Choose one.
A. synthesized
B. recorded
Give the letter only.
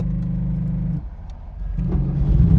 B